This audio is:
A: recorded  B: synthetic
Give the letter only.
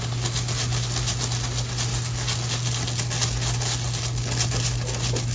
A